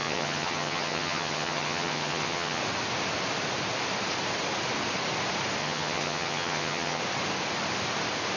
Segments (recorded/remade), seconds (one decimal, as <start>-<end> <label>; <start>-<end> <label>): 0.0-2.6 remade; 2.6-5.6 recorded; 5.6-7.0 remade; 7.0-8.4 recorded